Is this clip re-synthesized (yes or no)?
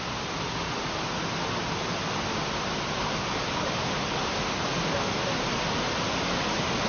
no